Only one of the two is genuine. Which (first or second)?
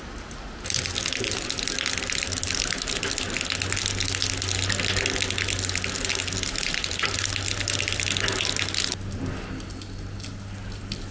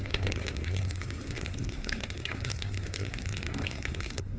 first